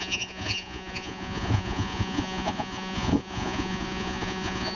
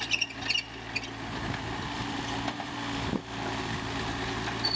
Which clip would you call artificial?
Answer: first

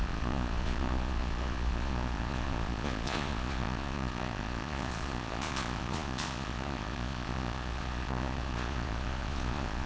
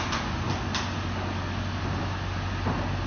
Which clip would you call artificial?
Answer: first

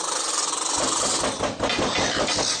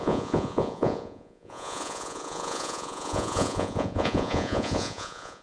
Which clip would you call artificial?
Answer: second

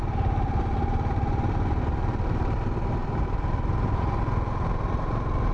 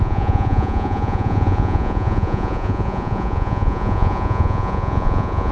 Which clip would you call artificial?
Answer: second